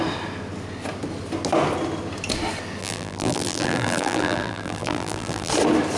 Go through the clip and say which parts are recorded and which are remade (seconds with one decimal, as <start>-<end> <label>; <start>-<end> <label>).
0.0-2.8 recorded; 2.8-5.5 remade; 5.5-6.0 recorded